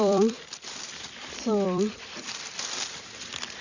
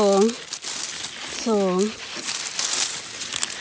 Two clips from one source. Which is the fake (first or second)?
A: first